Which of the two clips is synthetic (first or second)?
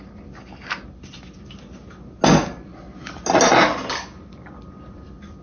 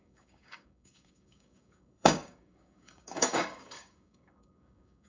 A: second